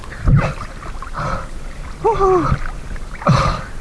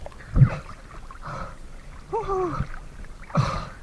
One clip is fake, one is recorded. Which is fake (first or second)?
second